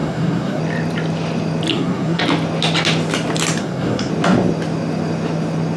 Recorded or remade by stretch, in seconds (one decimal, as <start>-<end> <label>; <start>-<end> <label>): 0.0-0.6 remade; 0.6-1.7 recorded; 1.7-2.2 remade; 2.2-3.6 recorded; 3.6-4.1 remade; 4.1-5.8 recorded